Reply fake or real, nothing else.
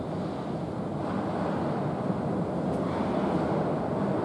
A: real